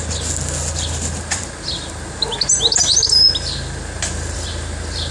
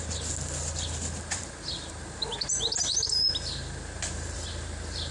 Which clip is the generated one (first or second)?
second